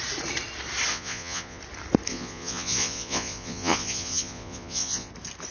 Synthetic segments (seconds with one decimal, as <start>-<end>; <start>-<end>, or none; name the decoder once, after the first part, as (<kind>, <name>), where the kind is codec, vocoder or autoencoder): 0.9-1.6 (vocoder, Vocos); 2.1-5.1